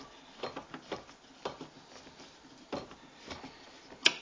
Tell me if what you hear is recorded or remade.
recorded